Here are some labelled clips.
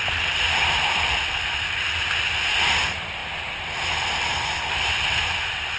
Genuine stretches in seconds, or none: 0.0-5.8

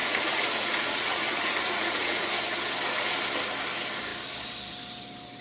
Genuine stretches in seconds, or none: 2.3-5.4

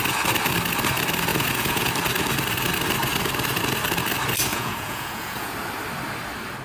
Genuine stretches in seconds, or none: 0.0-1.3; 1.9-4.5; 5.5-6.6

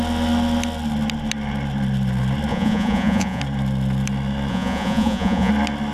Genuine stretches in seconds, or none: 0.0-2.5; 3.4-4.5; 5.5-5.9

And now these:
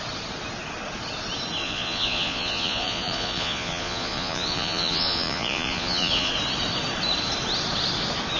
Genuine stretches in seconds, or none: 0.0-1.6; 6.3-8.4